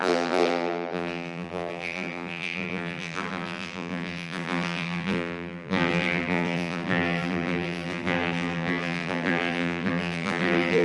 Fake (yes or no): yes